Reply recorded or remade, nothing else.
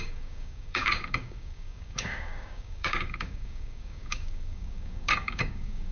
remade